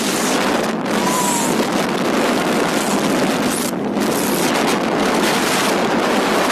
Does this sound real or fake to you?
real